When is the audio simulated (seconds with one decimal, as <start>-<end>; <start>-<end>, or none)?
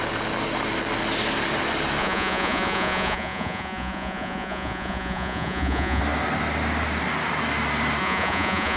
2.0-6.0; 8.0-8.8